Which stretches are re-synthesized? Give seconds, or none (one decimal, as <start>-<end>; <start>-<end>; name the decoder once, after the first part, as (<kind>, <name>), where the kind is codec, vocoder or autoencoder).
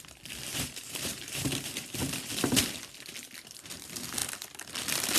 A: 0.5-2.5 (vocoder, BigVGAN v2)